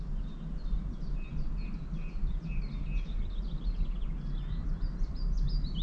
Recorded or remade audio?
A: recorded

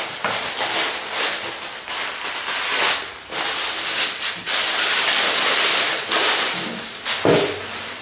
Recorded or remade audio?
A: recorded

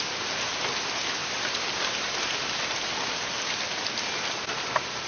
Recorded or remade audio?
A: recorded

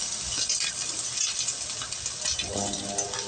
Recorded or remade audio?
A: recorded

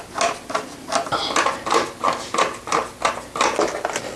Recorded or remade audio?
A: recorded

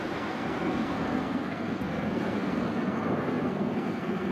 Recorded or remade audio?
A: remade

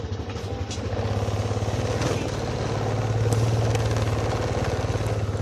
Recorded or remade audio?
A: recorded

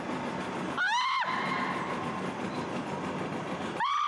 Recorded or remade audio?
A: recorded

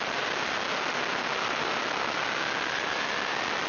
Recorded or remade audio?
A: recorded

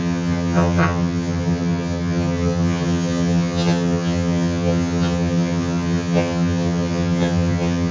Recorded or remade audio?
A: remade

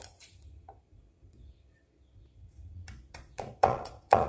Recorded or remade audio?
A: remade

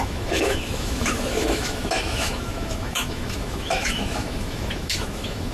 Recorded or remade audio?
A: remade